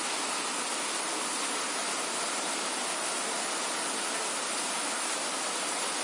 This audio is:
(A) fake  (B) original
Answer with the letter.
B